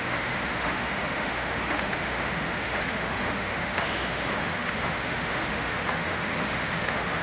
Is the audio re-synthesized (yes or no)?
yes